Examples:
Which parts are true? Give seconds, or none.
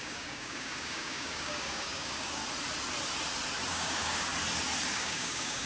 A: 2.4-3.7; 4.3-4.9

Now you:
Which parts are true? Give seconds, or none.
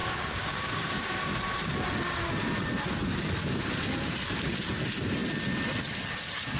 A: 1.2-6.6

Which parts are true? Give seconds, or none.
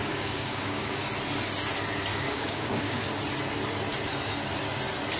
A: 1.0-2.1; 3.1-5.2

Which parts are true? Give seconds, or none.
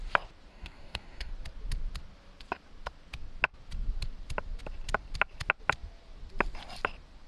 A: 0.0-0.5; 1.3-7.3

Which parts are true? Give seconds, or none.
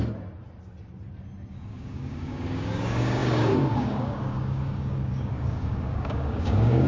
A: 0.0-1.5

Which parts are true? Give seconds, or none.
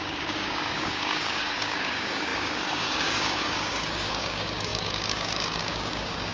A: none